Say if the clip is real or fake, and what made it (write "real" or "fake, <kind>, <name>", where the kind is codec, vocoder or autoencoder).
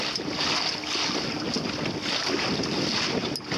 real